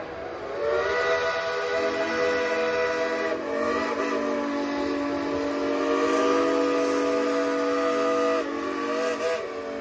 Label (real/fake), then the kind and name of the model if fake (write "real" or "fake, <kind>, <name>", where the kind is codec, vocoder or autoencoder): real